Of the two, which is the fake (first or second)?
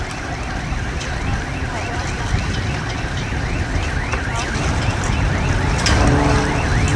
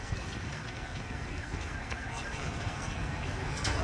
second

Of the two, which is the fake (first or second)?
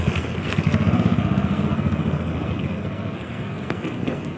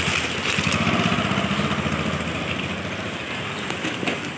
first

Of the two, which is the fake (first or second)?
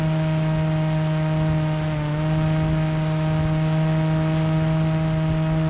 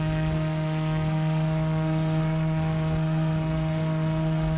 second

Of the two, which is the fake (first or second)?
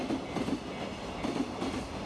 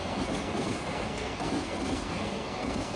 second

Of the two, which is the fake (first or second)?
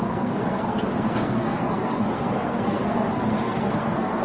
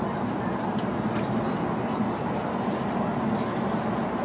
first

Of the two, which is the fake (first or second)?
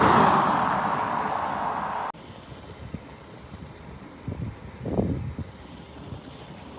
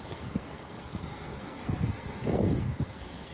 second